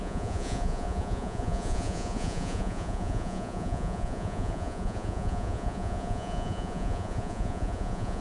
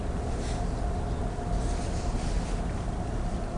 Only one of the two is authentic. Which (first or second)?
second